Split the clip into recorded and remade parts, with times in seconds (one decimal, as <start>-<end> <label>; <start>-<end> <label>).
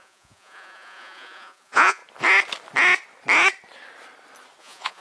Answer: 0.0-2.0 remade; 2.0-4.6 recorded; 4.6-5.0 remade